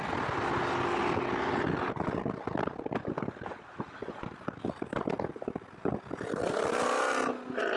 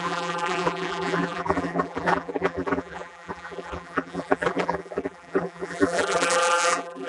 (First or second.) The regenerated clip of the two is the second